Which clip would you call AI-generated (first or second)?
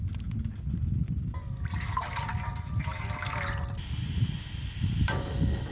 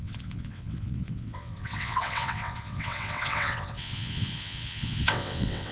second